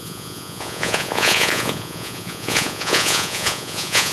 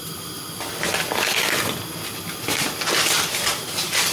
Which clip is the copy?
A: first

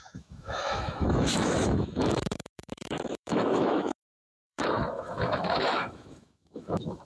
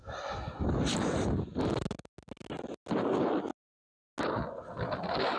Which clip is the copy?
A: first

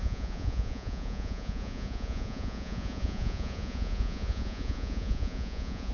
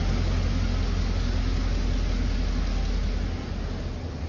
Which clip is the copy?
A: first